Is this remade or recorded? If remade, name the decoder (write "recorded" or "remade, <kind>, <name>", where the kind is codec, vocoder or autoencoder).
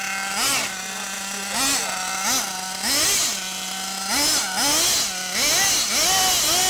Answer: recorded